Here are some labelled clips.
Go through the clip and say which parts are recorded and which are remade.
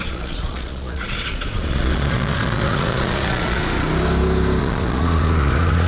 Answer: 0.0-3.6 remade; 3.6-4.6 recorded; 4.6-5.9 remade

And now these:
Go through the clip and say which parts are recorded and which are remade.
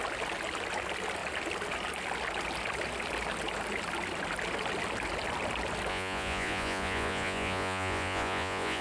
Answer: 0.0-5.9 recorded; 5.9-8.8 remade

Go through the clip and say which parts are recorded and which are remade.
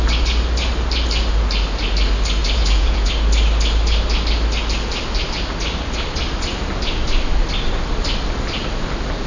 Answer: 0.0-2.4 recorded; 2.4-3.1 remade; 3.1-9.3 recorded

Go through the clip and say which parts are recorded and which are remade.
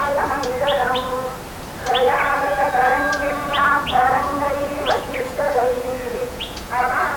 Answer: 0.0-2.5 recorded; 2.5-6.8 remade; 6.8-7.2 recorded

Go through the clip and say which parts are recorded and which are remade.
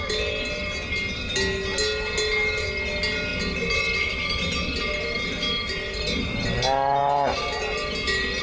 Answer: 0.0-8.4 recorded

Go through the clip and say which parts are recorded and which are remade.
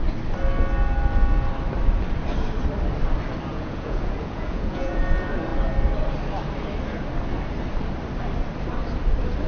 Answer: 0.0-3.5 recorded; 3.5-5.0 remade; 5.0-9.5 recorded